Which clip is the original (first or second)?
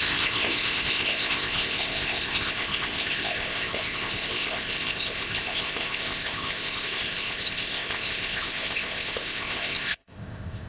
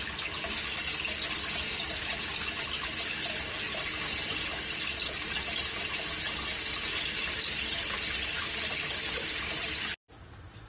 second